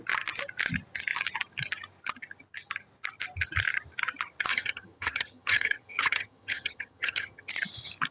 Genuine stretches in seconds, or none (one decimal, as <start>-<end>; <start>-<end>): 0.0-4.5; 7.5-8.1